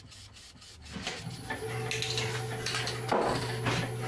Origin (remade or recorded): recorded